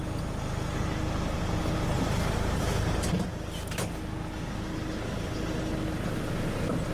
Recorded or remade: recorded